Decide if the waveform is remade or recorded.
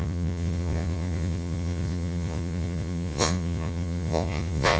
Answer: remade